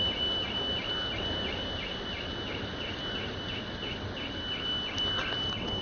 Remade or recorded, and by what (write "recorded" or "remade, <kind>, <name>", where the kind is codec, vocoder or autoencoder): recorded